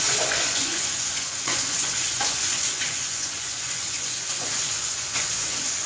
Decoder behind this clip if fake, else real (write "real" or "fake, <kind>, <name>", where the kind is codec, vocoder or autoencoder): fake, vocoder, Vocos